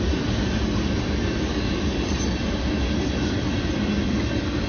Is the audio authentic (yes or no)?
yes